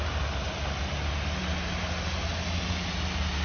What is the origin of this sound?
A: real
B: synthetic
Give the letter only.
A